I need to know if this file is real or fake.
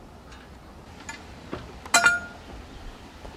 real